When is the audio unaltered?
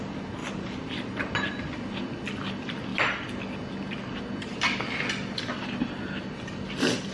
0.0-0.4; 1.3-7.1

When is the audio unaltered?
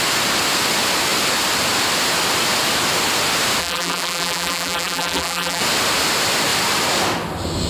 0.0-3.6; 5.6-7.7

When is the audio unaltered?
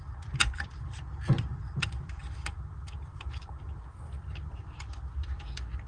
0.0-3.1; 3.6-5.9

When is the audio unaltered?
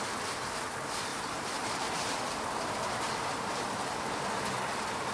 0.0-1.1; 3.8-5.1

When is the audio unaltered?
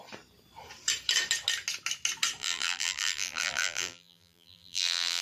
0.0-2.4